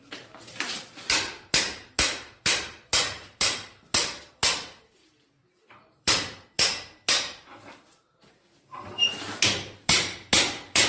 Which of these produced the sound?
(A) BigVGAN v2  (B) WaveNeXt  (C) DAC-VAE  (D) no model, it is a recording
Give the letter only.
A